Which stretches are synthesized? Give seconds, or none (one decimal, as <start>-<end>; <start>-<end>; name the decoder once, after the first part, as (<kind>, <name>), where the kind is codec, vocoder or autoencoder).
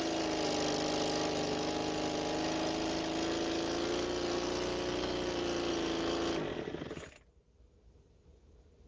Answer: none